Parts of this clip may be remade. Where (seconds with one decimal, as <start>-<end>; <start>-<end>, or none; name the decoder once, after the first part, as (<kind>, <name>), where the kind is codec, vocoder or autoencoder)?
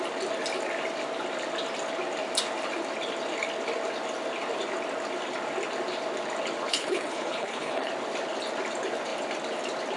6.7-7.9 (codec, HILCodec)